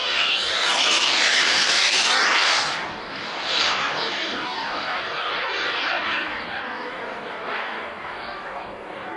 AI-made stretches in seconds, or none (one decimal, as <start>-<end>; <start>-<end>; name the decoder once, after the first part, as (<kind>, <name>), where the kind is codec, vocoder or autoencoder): 0.0-9.2 (codec, DAC)